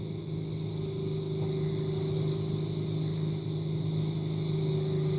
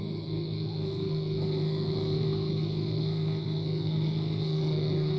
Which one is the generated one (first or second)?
second